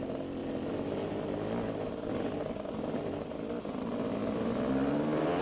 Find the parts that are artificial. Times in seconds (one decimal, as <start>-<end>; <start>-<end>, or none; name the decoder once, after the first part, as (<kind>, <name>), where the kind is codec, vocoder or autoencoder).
none